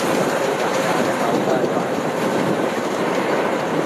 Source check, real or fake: fake